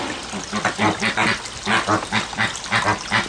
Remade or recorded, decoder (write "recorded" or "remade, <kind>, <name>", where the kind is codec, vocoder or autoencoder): recorded